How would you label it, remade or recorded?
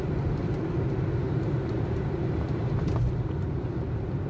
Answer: recorded